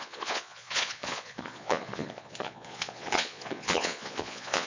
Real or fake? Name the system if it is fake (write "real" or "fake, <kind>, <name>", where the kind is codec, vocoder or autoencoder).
fake, vocoder, Vocos